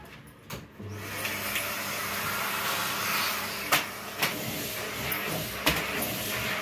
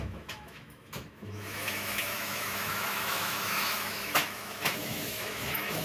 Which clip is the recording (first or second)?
first